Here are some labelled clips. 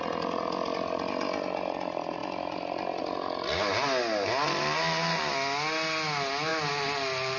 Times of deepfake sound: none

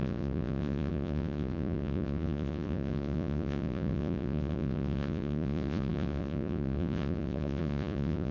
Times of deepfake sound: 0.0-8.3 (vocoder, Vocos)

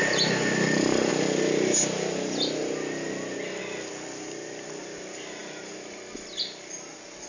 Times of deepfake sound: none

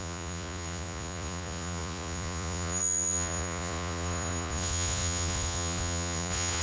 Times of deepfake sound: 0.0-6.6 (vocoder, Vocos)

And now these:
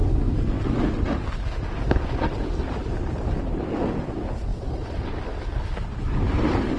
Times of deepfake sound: 0.0-0.6 (codec, SNAC)

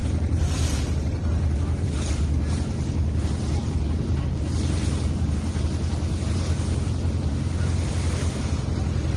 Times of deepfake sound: 0.0-1.5 (vocoder, BigVGAN v2); 3.6-5.2